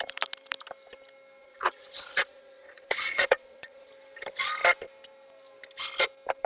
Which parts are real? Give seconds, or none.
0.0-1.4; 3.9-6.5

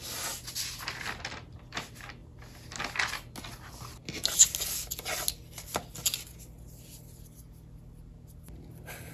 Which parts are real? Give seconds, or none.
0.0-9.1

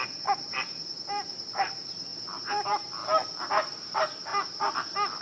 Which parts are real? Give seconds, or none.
3.0-3.5